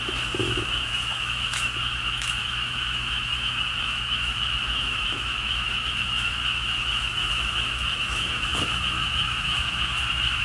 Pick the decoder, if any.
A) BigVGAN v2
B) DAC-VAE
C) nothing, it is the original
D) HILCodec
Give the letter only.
B